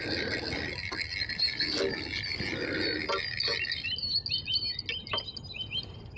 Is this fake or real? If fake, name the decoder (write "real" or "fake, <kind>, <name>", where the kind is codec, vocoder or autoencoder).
real